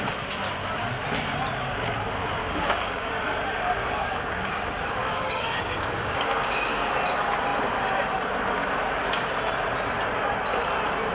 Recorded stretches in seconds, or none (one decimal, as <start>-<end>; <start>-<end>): 0.0-2.4; 3.1-4.0; 4.6-5.0; 6.9-11.1